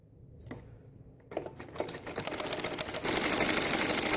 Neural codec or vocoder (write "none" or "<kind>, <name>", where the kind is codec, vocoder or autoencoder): none